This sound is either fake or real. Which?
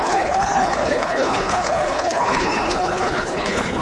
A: fake